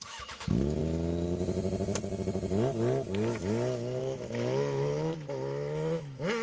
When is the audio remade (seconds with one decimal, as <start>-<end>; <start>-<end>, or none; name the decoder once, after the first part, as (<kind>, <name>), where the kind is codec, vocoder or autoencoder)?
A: 0.0-0.8 (autoencoder, DAC-VAE); 4.0-6.4